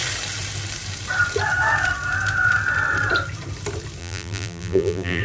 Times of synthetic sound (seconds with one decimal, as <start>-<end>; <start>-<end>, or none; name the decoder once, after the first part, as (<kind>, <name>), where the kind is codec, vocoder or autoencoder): 4.0-5.2 (vocoder, BigVGAN v2)